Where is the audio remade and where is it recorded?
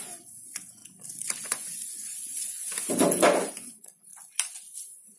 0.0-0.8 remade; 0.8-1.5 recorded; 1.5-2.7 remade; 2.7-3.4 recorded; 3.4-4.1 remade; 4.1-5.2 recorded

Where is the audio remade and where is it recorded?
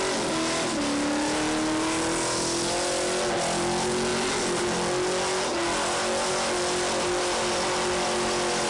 0.0-8.7 recorded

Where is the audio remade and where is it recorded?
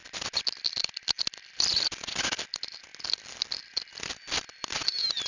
0.0-5.3 remade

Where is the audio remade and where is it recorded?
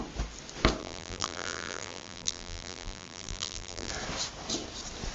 0.0-0.8 recorded; 0.8-3.9 remade; 3.9-5.1 recorded